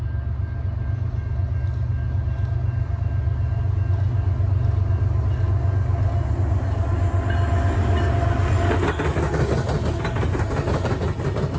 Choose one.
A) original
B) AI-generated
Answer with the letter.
A